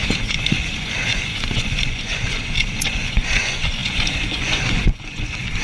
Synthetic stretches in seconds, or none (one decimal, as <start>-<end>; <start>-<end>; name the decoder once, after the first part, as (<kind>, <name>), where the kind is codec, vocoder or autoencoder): 0.0-5.6 (vocoder, Vocos)